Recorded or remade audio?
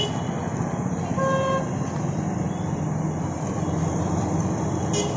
recorded